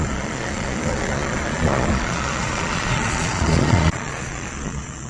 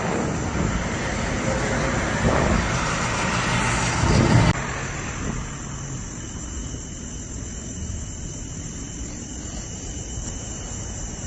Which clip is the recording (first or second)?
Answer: second